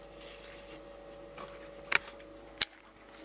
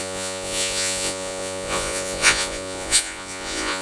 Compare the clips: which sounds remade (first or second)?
second